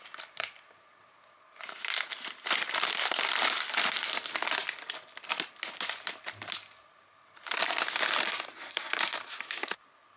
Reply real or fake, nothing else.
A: real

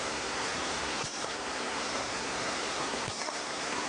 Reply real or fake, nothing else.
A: fake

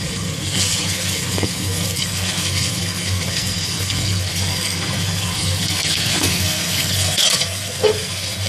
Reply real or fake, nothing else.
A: fake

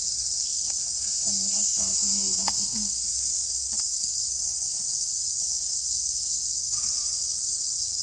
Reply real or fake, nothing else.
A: fake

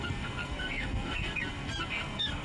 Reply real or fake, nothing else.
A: fake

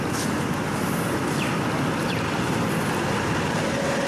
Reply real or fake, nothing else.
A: real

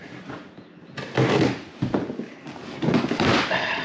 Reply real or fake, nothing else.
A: real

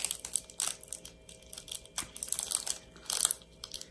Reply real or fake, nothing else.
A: real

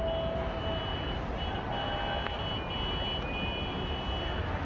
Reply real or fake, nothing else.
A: real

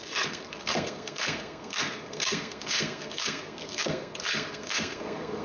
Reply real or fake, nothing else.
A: fake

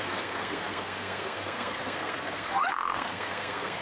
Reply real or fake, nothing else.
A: fake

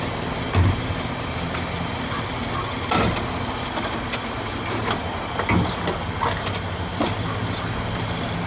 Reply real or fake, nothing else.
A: real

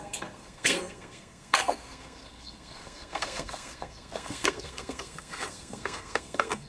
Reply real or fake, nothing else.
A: fake